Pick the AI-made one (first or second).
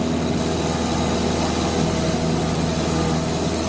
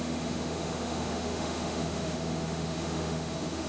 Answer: second